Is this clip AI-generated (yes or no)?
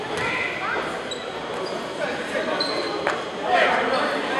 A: no